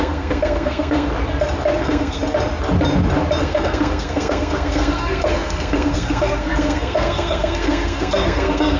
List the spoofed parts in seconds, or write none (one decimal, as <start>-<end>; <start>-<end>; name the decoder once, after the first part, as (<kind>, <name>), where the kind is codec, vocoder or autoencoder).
0.0-1.1 (codec, SNAC); 1.8-2.2; 3.4-8.8